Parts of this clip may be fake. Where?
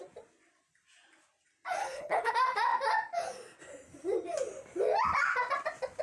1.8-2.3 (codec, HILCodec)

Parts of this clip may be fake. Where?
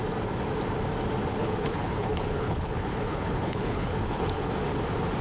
1.4-4.5 (codec, HILCodec)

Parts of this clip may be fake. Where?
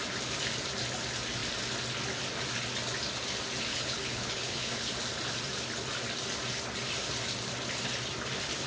3.7-4.8 (codec, HILCodec)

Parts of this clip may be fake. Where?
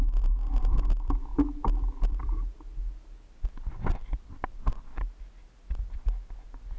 none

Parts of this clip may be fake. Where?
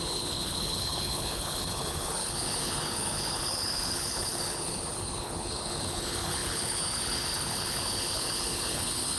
0.0-9.2 (codec, HILCodec)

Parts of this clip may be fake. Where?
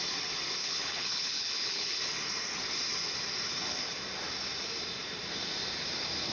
0.6-2.0 (codec, HILCodec)